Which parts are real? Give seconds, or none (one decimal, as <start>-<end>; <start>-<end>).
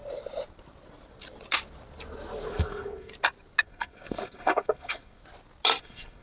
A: 0.0-2.5; 3.1-3.6; 5.2-5.8